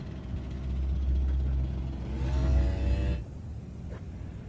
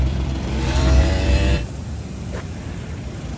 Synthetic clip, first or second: second